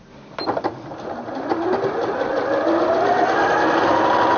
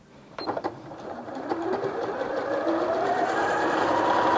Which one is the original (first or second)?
first